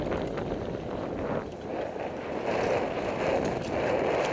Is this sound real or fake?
real